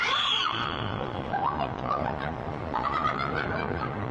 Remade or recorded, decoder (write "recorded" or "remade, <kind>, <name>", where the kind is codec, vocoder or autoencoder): remade, vocoder, Vocos